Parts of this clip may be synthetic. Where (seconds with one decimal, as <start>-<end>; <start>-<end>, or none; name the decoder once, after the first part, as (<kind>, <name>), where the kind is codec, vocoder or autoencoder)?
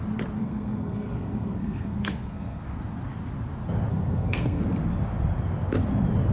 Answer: 0.4-2.6 (codec, SNAC); 3.9-4.6